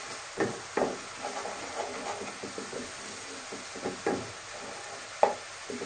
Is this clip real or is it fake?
real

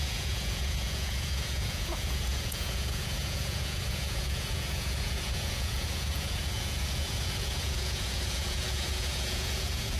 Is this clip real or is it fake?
fake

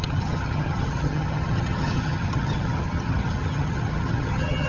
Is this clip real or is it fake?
fake